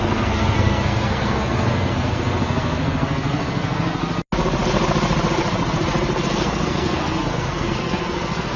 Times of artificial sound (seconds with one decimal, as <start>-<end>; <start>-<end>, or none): 0.0-4.0; 6.3-8.6